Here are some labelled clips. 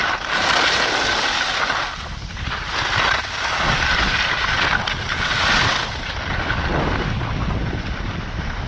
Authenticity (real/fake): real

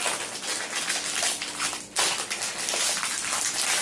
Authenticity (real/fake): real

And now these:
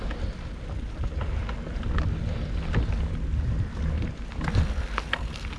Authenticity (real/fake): real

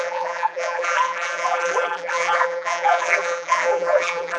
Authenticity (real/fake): fake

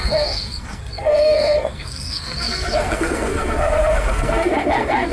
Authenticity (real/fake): fake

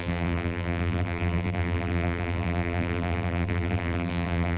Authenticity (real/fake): fake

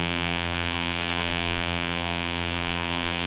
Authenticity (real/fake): fake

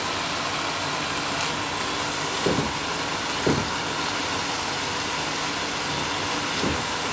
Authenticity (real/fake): real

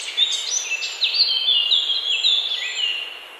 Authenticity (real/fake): real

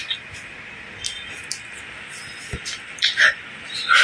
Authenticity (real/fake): real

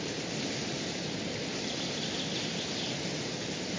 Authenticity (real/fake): real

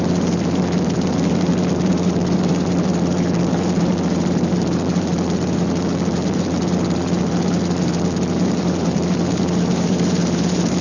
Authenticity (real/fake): fake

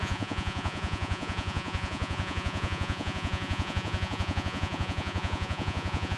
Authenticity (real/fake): fake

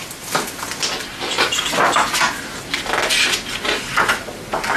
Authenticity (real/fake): real